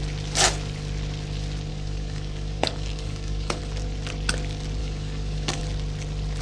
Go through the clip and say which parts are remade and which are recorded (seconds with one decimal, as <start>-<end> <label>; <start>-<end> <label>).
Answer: 0.0-1.7 recorded; 1.7-3.6 remade; 3.6-4.8 recorded; 4.8-5.6 remade; 5.6-6.4 recorded